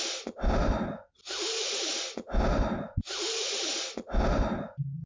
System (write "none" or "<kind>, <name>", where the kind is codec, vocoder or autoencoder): none